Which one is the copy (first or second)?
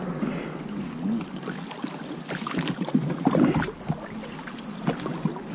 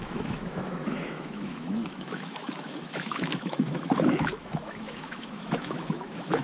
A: second